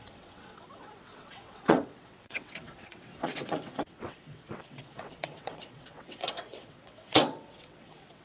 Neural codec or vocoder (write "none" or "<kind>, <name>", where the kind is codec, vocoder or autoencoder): vocoder, WaveNeXt